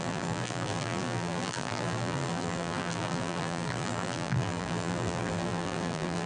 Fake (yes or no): yes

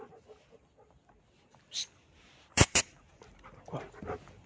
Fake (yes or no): yes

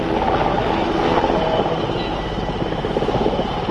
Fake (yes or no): no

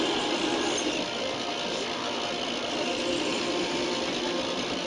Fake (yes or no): no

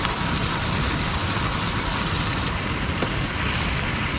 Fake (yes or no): yes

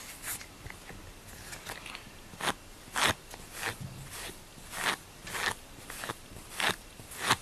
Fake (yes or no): no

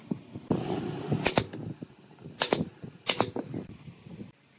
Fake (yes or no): no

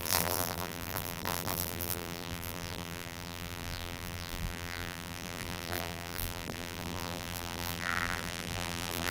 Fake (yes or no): yes